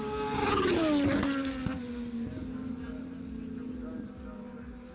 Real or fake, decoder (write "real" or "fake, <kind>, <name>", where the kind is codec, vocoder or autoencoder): real